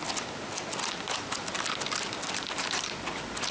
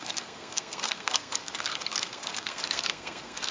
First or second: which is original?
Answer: first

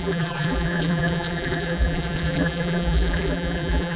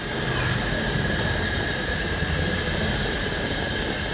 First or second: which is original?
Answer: second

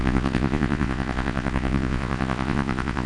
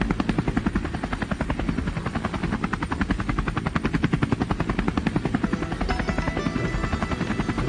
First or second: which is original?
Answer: second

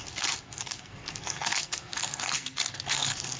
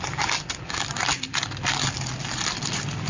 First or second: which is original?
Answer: second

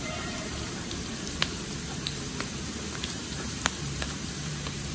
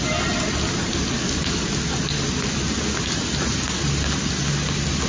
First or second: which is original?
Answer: second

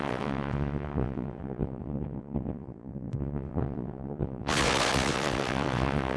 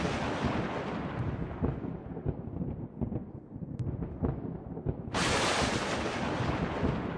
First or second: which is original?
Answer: second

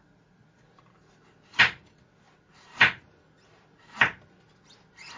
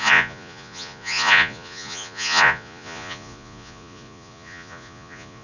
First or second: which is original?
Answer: first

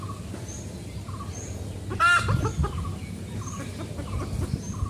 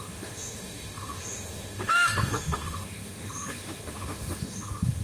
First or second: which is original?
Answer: first